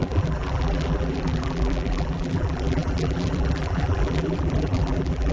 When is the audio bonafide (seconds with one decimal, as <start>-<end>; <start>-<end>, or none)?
none